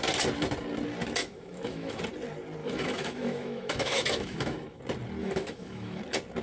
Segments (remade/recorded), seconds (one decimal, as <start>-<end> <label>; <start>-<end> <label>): 0.0-1.2 recorded; 1.2-2.0 remade; 2.0-2.6 recorded; 2.6-4.8 remade; 4.8-5.2 recorded; 5.2-6.0 remade; 6.0-6.4 recorded